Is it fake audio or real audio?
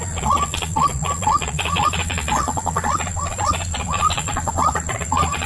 fake